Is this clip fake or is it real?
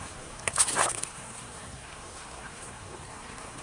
fake